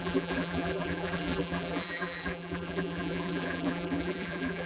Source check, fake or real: fake